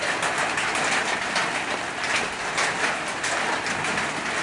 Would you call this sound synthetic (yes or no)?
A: no